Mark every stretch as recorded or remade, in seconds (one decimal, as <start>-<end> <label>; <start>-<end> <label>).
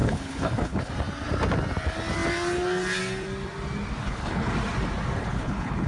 0.0-0.9 remade; 0.9-4.0 recorded; 4.0-4.5 remade; 4.5-5.2 recorded; 5.2-5.9 remade